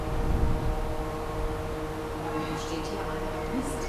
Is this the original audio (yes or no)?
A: yes